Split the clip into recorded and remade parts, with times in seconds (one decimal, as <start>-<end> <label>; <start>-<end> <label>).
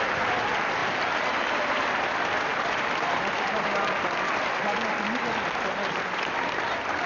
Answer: 0.0-7.1 recorded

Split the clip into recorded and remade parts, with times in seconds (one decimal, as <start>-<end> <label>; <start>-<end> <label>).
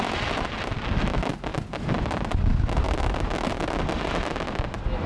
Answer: 0.0-5.1 recorded